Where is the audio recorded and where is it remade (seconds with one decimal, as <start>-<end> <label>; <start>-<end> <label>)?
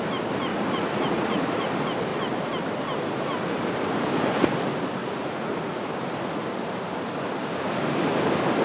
0.0-0.5 recorded; 0.5-1.7 remade; 1.7-5.0 recorded; 5.0-5.9 remade; 5.9-8.6 recorded